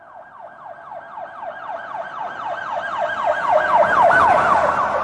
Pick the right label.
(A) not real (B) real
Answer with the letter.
B